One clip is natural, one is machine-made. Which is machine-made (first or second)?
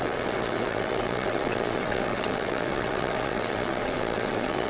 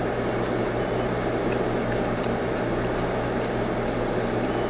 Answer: first